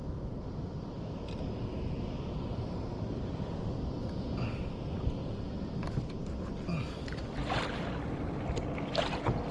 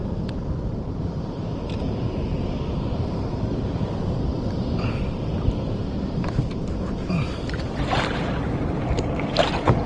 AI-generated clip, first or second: second